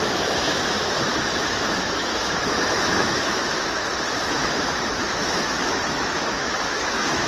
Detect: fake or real fake